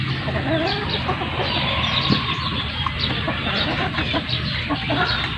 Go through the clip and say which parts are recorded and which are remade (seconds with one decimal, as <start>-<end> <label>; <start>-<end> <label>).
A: 0.0-5.4 recorded